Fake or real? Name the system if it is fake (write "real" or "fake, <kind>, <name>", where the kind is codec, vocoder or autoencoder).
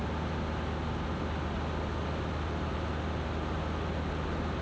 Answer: real